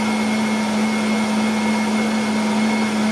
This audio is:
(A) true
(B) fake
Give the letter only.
A